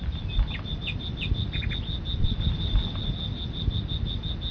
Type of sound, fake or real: real